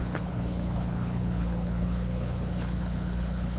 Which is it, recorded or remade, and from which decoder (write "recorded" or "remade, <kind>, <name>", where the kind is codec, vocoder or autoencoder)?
remade, codec, HILCodec